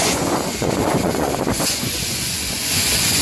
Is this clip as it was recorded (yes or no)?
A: no